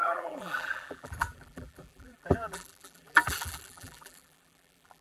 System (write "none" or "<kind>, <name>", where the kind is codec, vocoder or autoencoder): vocoder, BigVGAN v2